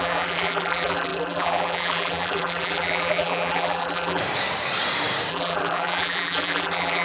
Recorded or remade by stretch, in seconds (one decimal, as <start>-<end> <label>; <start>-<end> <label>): 0.0-4.2 remade; 4.2-5.3 recorded; 5.3-7.0 remade